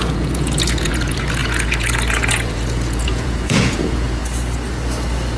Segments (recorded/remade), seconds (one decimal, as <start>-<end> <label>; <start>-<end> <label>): 0.0-4.2 remade; 4.2-5.4 recorded

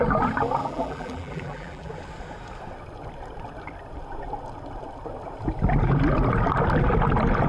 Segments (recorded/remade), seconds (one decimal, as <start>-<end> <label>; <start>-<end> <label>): 0.0-0.6 recorded; 0.6-1.9 remade; 1.9-7.5 recorded

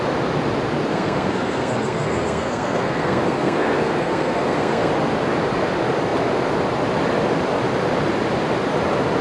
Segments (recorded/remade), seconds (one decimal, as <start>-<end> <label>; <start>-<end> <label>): 0.0-0.9 recorded; 0.9-4.9 remade; 4.9-9.2 recorded

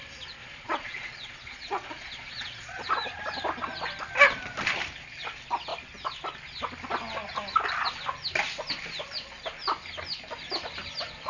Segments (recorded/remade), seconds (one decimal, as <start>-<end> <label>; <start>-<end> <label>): 0.0-0.4 recorded; 0.4-2.9 remade; 2.9-11.3 recorded